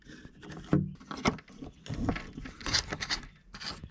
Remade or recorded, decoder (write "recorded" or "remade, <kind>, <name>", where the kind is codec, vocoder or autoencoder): recorded